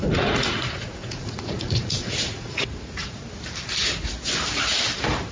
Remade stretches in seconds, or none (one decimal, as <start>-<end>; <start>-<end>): 0.0-3.2